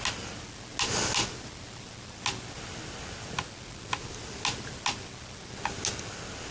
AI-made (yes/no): no